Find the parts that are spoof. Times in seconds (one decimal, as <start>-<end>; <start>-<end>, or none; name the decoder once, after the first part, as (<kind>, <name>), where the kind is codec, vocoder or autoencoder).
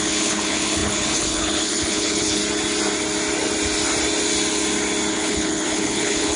0.0-2.4 (codec, HILCodec); 5.1-6.4